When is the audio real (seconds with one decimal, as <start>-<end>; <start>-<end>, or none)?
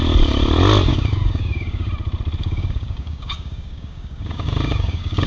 0.0-0.9; 1.9-2.4